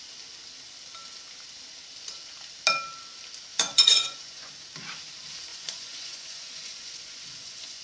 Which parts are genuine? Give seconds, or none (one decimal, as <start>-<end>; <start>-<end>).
0.0-3.5; 4.5-5.5